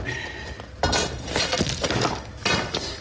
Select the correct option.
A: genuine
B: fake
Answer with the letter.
A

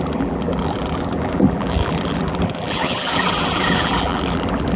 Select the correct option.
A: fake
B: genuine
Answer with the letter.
A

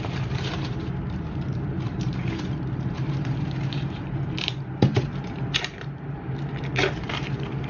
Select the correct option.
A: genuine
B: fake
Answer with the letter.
B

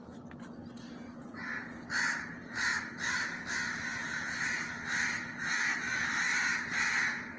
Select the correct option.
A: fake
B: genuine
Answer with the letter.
B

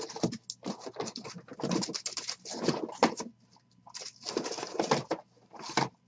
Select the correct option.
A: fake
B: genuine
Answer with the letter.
B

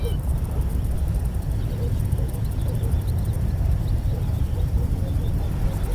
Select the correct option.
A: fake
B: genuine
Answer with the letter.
A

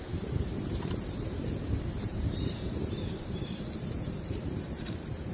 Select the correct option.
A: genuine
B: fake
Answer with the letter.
B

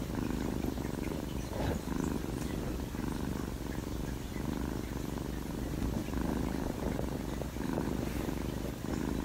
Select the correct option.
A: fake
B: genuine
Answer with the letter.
A